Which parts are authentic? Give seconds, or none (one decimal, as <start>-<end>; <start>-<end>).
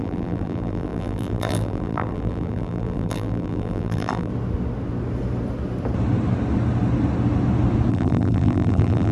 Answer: 4.3-7.9